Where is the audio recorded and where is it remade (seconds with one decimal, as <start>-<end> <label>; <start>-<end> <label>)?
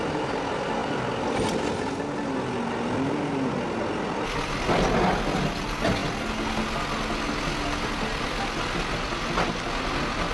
0.0-10.3 recorded